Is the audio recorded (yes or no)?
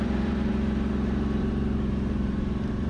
no